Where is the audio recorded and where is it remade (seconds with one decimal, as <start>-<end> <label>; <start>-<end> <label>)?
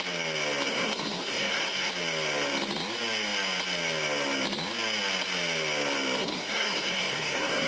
0.0-0.7 recorded; 0.7-1.9 remade; 1.9-6.2 recorded; 6.2-7.7 remade